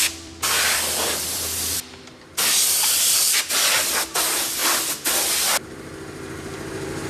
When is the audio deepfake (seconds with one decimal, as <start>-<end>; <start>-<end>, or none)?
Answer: 0.0-7.1